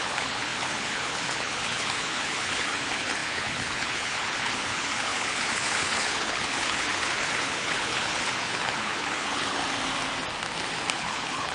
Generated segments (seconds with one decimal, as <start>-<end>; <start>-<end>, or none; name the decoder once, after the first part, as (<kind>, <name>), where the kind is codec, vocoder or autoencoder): 0.0-9.6 (codec, HILCodec); 10.9-11.5